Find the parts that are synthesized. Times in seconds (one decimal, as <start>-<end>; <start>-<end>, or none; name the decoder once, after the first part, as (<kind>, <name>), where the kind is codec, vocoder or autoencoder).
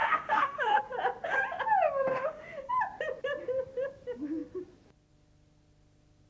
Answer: 0.0-0.8 (autoencoder, DAC-VAE); 2.1-2.7